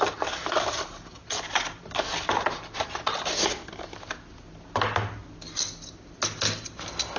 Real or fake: real